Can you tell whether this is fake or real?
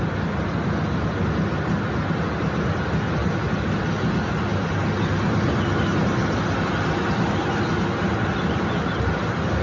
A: real